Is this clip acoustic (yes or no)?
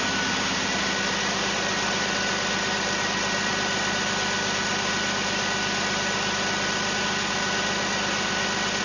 yes